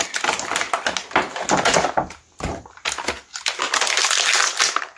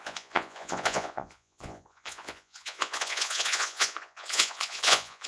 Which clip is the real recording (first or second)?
first